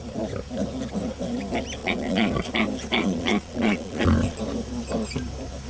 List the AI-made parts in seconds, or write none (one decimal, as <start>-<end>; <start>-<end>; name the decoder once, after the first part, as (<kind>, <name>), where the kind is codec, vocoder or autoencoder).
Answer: 1.8-2.5 (vocoder, Vocos); 3.0-4.4